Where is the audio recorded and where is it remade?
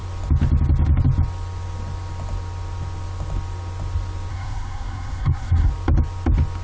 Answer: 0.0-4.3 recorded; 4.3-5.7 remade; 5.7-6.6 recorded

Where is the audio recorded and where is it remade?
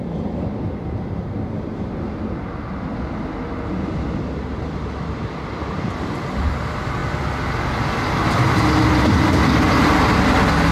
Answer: 0.0-10.7 recorded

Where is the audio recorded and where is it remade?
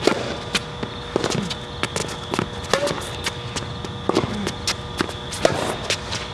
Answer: 0.0-6.3 recorded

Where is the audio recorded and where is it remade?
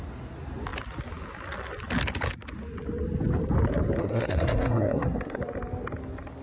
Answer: 0.0-4.0 recorded; 4.0-5.4 remade; 5.4-6.4 recorded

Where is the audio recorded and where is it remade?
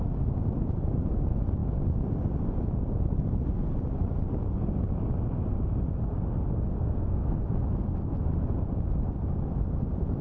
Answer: 0.0-6.7 recorded; 6.7-7.3 remade; 7.3-10.2 recorded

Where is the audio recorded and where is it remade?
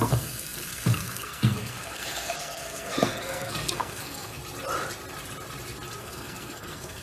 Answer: 0.0-4.4 remade; 4.4-6.0 recorded; 6.0-7.0 remade